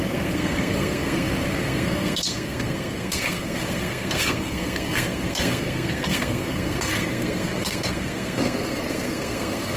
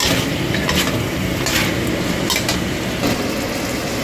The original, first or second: second